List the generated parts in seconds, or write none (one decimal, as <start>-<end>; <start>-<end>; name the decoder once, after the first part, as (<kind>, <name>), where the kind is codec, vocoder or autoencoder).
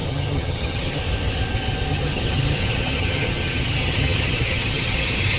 0.0-1.0 (vocoder, HiFi-GAN); 1.9-5.4